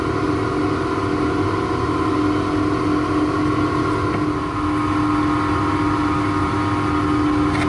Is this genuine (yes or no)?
yes